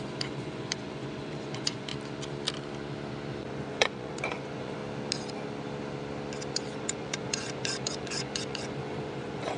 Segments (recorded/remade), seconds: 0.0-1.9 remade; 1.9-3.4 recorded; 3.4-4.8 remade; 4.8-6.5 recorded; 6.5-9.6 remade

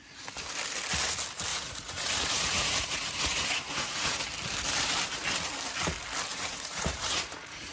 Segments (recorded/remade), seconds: 0.0-1.5 recorded; 1.5-4.2 remade; 4.2-6.3 recorded; 6.3-7.7 remade

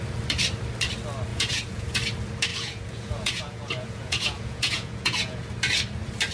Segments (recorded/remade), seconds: 0.0-1.3 recorded; 1.3-2.0 remade; 2.0-2.5 recorded; 2.5-5.5 remade; 5.5-6.3 recorded

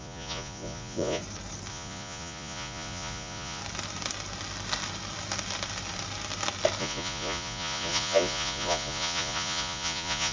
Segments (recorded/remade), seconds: 0.0-1.2 remade; 1.2-1.7 recorded; 1.7-3.6 remade; 3.6-6.8 recorded; 6.8-10.3 remade

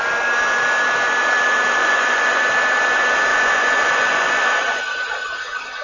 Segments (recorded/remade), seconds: 0.0-1.8 recorded; 1.8-2.4 remade; 2.4-3.3 recorded; 3.3-4.8 remade; 4.8-5.8 recorded

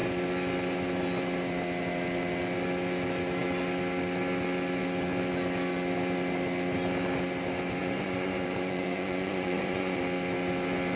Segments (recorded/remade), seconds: 0.0-7.8 recorded; 7.8-10.0 remade; 10.0-11.0 recorded

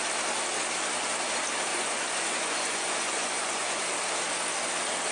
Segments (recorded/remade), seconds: 0.0-1.7 recorded; 1.7-3.8 remade; 3.8-5.1 recorded